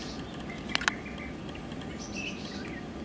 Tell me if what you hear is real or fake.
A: real